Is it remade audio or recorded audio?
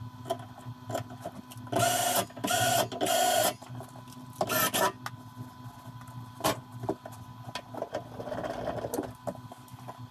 recorded